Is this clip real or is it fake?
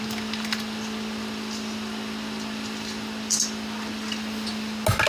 real